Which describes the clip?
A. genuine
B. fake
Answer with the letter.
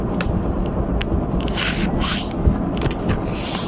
A